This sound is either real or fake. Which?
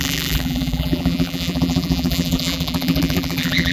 fake